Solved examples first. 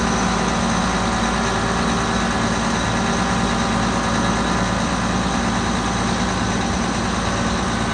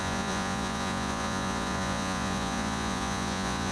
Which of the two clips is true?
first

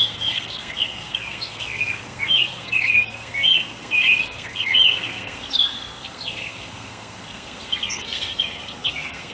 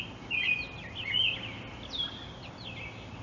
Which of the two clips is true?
second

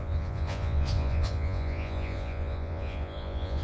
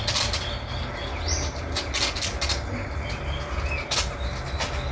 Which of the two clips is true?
second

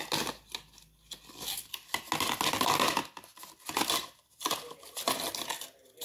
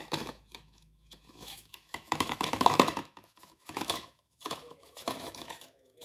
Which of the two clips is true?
first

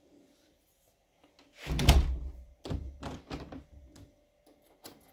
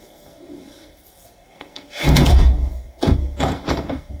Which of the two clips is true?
first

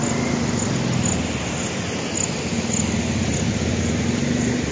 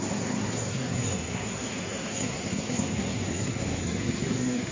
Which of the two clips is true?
first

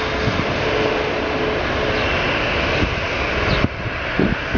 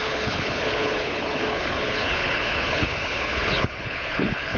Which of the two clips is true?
first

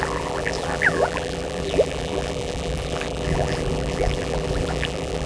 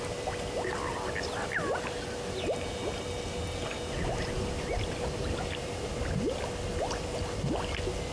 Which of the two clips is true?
second